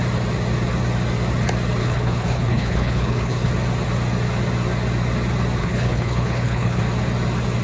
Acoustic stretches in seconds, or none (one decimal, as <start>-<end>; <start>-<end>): 0.0-1.8; 3.5-5.6; 6.8-7.6